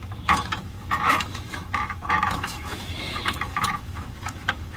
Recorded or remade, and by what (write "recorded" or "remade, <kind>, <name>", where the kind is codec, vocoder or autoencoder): remade, autoencoder, DAC-VAE